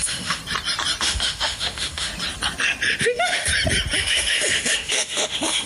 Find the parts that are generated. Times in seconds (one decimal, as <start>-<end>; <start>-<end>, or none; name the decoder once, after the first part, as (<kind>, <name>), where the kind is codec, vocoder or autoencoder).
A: 0.0-0.4 (autoencoder, DAC-VAE); 1.0-2.1; 3.0-3.5; 4.0-5.7